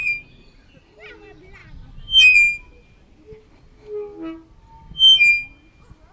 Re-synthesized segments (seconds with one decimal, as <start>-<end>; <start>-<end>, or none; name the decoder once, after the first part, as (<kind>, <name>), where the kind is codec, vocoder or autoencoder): 0.0-1.1 (vocoder, BigVGAN v2)